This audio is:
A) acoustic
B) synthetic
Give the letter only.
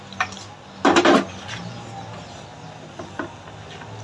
A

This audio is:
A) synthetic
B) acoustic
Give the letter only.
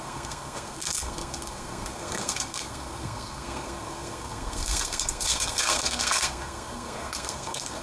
A